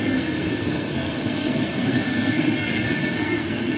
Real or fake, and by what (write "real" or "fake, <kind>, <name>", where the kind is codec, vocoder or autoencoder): fake, codec, SNAC